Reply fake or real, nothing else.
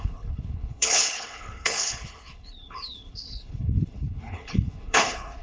fake